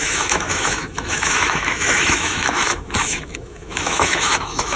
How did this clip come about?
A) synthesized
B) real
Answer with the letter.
A